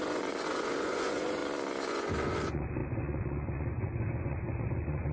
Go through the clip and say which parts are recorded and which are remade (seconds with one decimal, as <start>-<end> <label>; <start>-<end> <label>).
0.0-1.4 remade; 1.4-1.9 recorded; 1.9-5.1 remade